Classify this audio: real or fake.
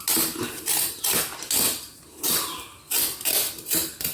real